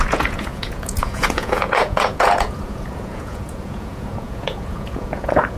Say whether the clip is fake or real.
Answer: fake